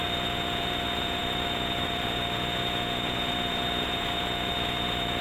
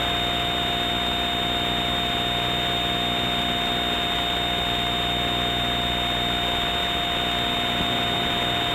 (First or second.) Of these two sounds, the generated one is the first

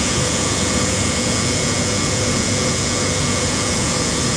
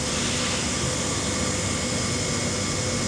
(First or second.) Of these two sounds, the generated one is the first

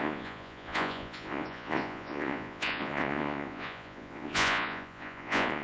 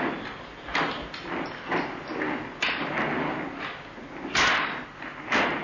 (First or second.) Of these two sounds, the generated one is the first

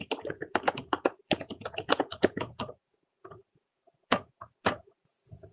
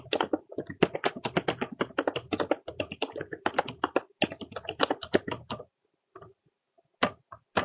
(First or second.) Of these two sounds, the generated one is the first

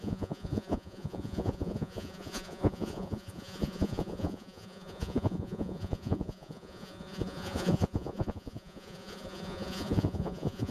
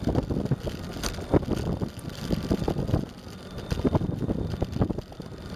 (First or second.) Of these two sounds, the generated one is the first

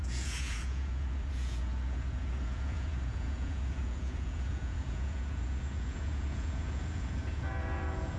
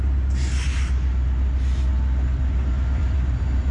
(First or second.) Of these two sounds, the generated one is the first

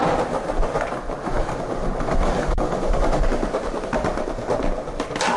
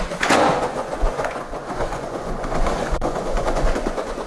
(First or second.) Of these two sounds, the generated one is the second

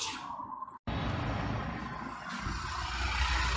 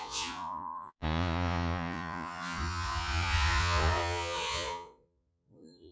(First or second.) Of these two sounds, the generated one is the second